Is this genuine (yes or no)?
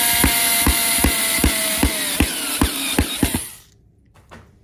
yes